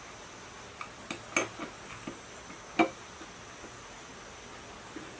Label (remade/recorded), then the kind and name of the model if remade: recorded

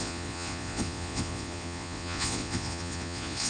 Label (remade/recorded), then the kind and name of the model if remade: remade, vocoder, Vocos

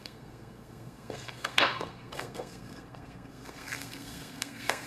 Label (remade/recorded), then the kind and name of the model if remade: remade, codec, SNAC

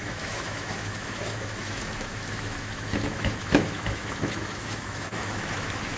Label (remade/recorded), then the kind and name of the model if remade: remade, autoencoder, DAC-VAE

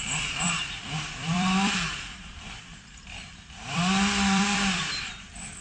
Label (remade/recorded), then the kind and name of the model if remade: remade, vocoder, BigVGAN v2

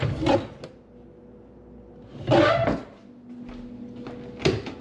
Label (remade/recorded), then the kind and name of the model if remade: recorded